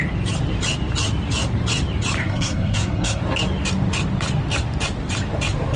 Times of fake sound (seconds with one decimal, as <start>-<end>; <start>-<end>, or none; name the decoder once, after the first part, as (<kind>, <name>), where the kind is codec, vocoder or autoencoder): 2.2-3.2 (codec, SNAC)